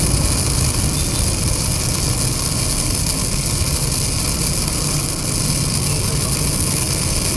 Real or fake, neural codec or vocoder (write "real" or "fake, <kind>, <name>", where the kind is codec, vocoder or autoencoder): real